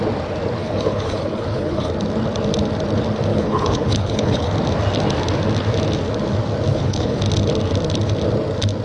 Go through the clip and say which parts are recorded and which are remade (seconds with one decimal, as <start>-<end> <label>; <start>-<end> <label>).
0.0-0.6 recorded; 0.6-1.9 remade; 1.9-3.3 recorded; 3.3-4.5 remade; 4.5-6.7 recorded; 6.7-7.2 remade; 7.2-8.8 recorded